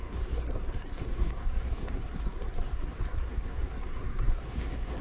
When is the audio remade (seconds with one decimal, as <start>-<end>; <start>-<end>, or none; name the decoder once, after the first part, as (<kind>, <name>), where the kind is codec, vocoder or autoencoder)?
0.0-5.0 (codec, SNAC)